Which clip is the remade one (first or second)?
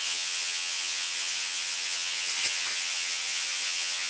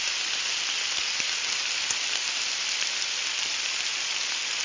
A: first